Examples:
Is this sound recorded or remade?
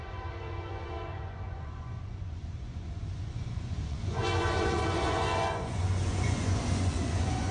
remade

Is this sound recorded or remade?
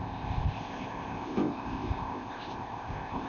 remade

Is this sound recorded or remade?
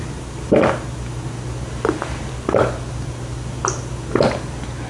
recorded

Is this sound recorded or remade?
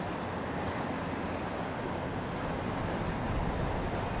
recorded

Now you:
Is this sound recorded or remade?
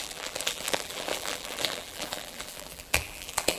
remade